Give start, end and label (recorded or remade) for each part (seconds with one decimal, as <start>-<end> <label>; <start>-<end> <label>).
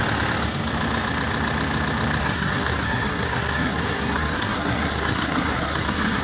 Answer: 0.0-2.2 recorded; 2.2-6.2 remade